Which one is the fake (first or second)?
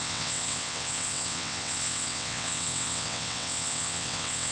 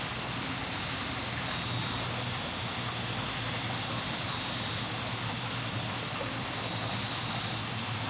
first